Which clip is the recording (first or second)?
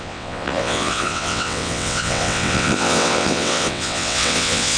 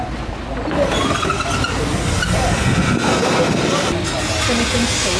second